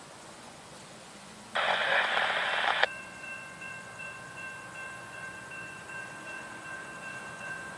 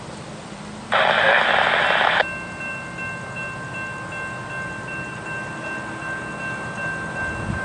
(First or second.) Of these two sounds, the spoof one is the first